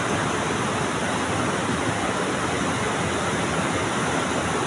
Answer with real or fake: real